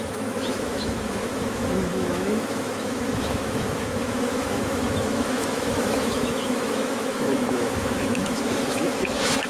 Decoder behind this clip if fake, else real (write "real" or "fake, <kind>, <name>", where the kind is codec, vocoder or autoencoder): fake, autoencoder, DAC-VAE